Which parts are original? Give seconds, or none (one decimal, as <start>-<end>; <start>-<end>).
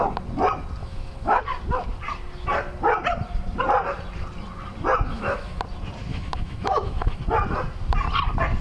0.0-0.8; 1.4-5.1; 5.6-6.1; 7.2-8.6